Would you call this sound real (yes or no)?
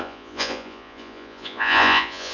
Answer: no